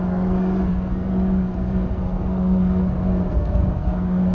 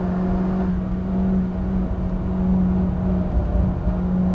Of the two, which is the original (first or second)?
second